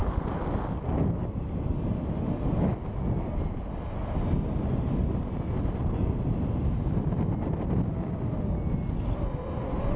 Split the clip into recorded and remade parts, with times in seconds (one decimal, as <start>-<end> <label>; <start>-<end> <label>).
0.0-10.0 recorded